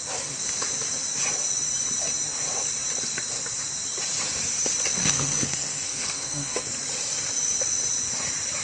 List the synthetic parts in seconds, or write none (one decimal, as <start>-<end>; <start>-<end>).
5.0-6.7